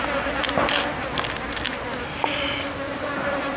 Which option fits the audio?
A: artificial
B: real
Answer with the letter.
B